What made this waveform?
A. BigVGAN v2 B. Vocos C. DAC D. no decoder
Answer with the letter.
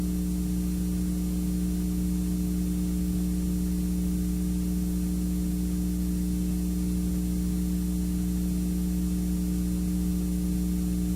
D